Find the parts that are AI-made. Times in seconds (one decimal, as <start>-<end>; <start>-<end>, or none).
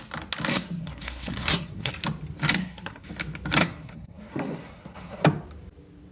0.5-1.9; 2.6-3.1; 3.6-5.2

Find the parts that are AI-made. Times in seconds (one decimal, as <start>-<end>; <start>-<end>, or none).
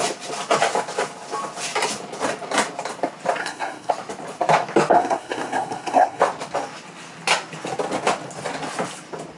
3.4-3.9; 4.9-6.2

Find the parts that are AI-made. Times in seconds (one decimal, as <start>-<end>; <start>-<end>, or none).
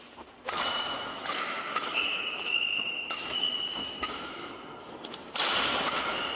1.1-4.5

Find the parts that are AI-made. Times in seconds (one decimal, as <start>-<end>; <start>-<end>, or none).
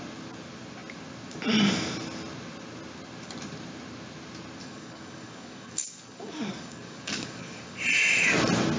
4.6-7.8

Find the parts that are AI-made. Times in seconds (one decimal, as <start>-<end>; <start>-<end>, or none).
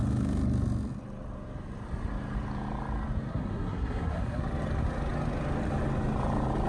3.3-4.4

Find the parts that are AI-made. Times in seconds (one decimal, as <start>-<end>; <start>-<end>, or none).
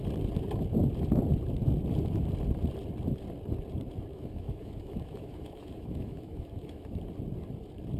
4.1-7.0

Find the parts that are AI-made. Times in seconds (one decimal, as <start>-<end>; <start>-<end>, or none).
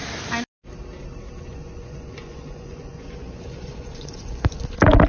1.5-4.6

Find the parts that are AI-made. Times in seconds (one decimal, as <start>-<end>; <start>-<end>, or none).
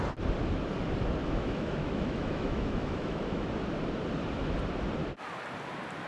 1.2-3.5